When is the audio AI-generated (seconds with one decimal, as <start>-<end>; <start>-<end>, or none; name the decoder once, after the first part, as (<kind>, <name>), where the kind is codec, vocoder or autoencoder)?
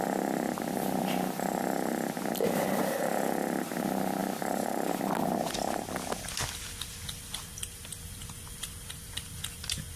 4.2-4.9 (vocoder, BigVGAN v2); 7.8-8.4